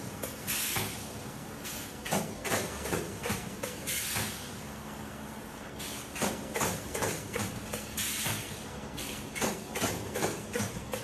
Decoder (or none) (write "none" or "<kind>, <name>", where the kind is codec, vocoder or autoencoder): codec, SNAC